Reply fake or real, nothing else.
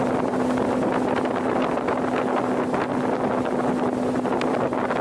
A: real